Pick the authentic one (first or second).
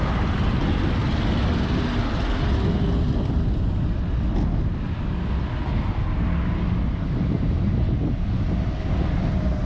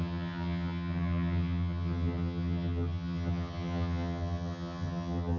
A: first